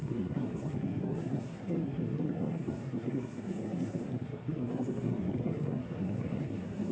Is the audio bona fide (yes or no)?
no